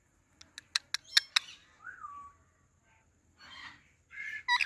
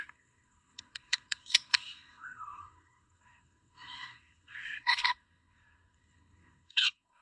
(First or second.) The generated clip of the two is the second